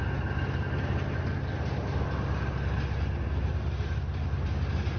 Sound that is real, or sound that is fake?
real